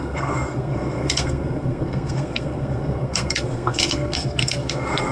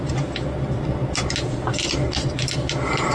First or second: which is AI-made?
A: first